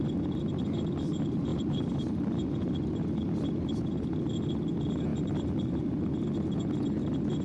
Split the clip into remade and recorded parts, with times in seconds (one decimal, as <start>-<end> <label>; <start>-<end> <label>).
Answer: 0.0-1.5 recorded; 1.5-2.5 remade; 2.5-5.1 recorded; 5.1-5.8 remade; 5.8-7.4 recorded